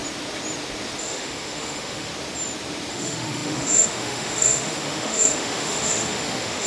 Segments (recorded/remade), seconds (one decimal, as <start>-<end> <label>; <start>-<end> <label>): 0.0-1.0 recorded; 1.0-2.1 remade; 2.1-2.9 recorded; 2.9-6.7 remade